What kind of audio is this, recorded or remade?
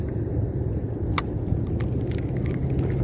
recorded